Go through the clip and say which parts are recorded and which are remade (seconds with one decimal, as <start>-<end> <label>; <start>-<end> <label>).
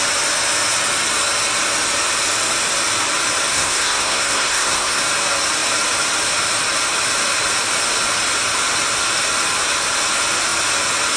0.0-3.5 recorded; 3.5-5.0 remade; 5.0-11.2 recorded